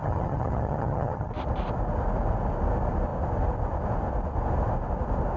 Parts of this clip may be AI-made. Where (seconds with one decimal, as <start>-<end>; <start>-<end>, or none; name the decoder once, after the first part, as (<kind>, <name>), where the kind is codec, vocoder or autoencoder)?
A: 0.0-1.3 (vocoder, HiFi-GAN)